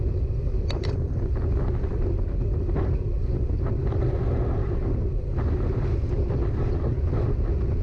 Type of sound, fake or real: real